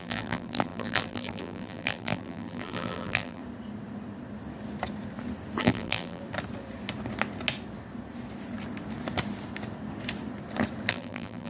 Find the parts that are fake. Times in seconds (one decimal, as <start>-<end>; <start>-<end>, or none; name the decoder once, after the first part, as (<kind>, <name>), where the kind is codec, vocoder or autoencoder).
0.0-3.4 (vocoder, BigVGAN v2); 5.6-6.2; 10.9-11.5